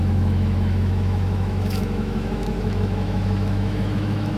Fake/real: fake